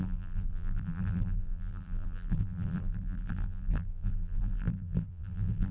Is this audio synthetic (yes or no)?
yes